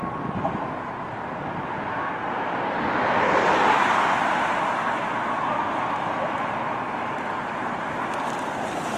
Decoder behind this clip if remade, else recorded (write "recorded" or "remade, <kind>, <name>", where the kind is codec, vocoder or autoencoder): recorded